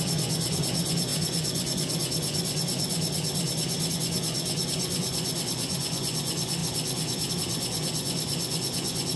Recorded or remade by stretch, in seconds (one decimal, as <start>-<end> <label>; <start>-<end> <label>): 0.0-9.2 remade